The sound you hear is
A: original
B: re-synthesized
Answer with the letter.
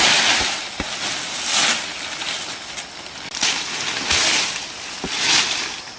A